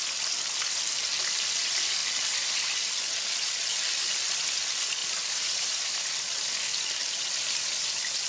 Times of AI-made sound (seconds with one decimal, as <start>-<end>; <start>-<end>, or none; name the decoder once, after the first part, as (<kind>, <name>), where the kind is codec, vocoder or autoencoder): 5.0-8.3 (vocoder, BigVGAN v2)